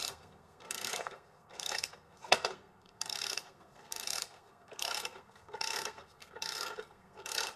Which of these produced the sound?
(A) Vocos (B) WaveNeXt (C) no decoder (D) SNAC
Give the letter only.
D